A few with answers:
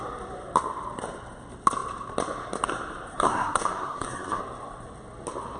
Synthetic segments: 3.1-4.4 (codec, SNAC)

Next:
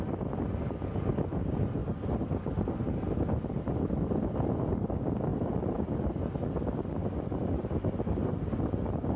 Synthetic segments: 5.3-6.2 (vocoder, BigVGAN v2)

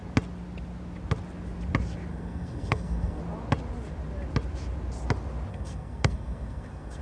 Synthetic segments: 2.1-3.2 (codec, SNAC); 5.5-7.0

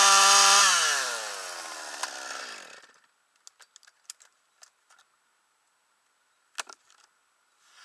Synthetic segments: none

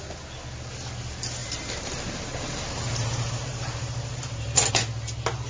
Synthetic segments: 1.4-4.7 (vocoder, BigVGAN v2)